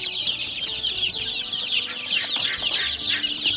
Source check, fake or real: fake